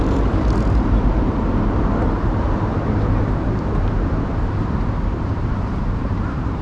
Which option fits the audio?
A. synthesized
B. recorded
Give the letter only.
A